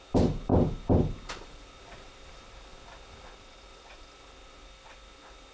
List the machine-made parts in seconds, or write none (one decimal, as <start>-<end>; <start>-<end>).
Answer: none